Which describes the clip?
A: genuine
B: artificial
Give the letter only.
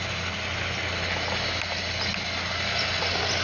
A